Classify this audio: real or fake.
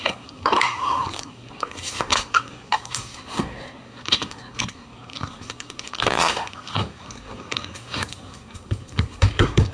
fake